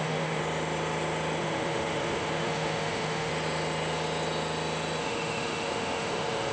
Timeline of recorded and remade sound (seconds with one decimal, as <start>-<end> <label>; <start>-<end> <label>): 0.0-0.4 remade; 0.4-1.4 recorded; 1.4-3.3 remade; 3.3-5.0 recorded; 5.0-6.5 remade